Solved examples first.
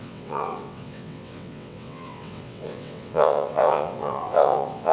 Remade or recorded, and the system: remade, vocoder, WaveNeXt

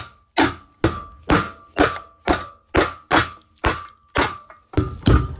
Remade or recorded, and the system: recorded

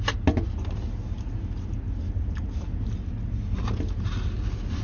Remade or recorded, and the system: recorded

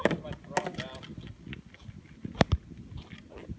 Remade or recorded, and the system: recorded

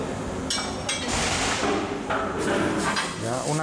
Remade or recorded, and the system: recorded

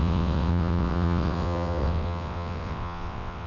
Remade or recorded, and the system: remade, vocoder, WaveNeXt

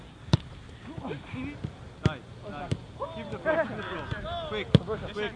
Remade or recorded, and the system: recorded